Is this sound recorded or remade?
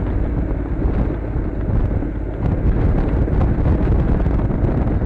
recorded